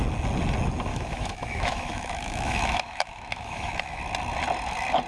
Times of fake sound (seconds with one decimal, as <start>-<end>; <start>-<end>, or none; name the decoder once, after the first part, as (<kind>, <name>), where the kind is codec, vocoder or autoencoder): 0.9-4.0 (autoencoder, DAC-VAE)